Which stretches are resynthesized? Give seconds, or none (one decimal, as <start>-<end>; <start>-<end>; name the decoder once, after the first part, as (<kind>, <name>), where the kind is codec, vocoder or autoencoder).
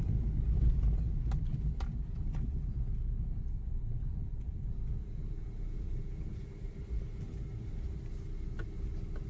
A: 1.9-6.5 (vocoder, Vocos)